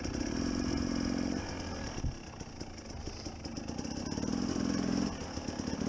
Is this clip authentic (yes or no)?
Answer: yes